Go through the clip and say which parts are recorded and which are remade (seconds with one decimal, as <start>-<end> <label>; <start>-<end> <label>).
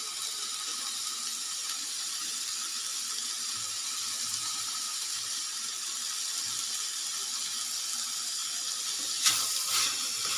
0.0-1.4 recorded; 1.4-2.4 remade; 2.4-4.4 recorded; 4.4-5.4 remade; 5.4-10.4 recorded